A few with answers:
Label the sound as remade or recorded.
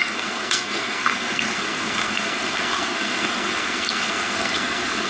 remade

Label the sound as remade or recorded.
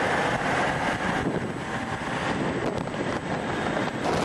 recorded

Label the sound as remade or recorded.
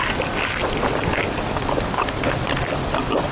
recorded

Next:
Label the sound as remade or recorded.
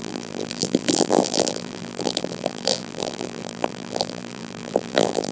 remade